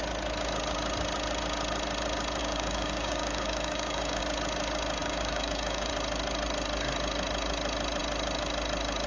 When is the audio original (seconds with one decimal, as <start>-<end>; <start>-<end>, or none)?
0.0-2.4; 4.2-5.0; 5.9-9.1